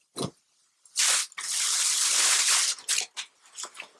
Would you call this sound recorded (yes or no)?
yes